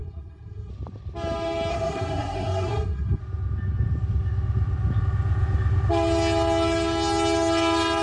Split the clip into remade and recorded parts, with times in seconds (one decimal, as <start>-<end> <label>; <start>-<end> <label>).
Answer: 0.0-0.7 remade; 0.7-1.7 recorded; 1.7-3.2 remade; 3.2-8.0 recorded